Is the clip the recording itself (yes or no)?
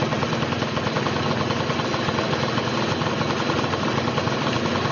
yes